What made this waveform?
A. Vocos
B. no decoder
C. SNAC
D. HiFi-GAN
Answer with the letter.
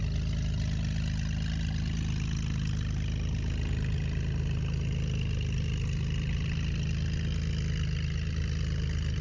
B